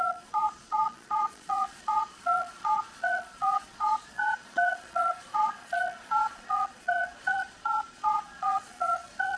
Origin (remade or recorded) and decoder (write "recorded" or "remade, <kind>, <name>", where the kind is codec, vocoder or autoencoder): remade, vocoder, Vocos